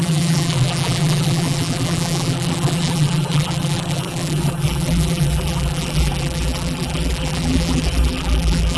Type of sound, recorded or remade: remade